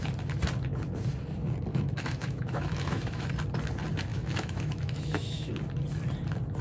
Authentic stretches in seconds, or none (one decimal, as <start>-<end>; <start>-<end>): 0.0-1.7; 3.3-4.1; 5.5-6.6